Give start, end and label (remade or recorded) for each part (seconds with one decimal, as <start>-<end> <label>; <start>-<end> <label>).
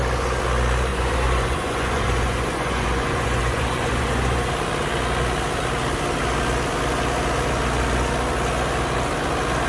0.0-0.9 recorded; 0.9-4.5 remade; 4.5-9.7 recorded